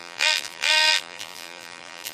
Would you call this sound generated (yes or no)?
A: yes